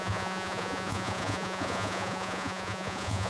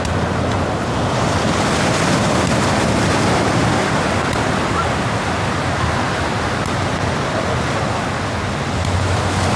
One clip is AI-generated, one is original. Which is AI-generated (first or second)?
first